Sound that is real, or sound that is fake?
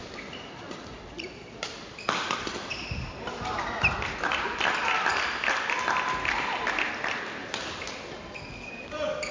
real